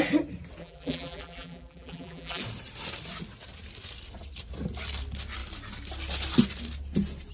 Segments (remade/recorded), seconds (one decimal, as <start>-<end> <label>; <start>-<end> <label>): 0.0-0.6 recorded; 0.6-2.4 remade; 2.4-7.3 recorded